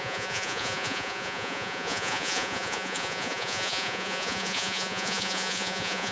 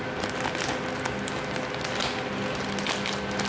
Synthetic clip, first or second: first